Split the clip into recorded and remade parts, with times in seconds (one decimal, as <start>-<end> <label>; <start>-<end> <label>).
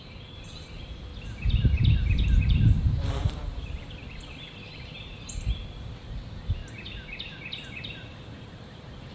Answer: 0.0-1.1 remade; 1.1-2.4 recorded; 2.4-6.6 remade; 6.6-7.7 recorded; 7.7-9.1 remade